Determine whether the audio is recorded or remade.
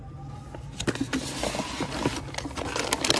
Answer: recorded